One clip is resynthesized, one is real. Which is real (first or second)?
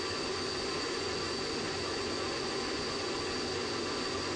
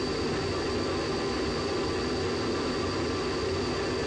second